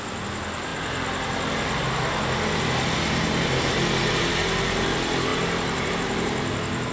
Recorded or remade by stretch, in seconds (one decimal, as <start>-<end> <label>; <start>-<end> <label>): 0.0-6.9 recorded